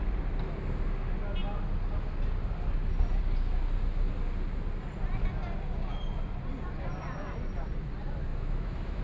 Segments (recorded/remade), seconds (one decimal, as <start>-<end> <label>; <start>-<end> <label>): 0.0-8.3 recorded; 8.3-9.0 remade